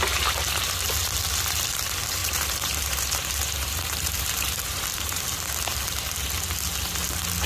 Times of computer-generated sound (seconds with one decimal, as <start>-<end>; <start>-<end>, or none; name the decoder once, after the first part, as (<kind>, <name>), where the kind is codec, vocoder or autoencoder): 2.2-5.2 (vocoder, BigVGAN v2)